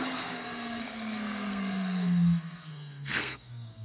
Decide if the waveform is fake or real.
fake